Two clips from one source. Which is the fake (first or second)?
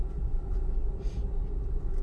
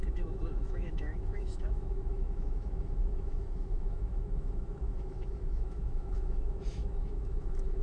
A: second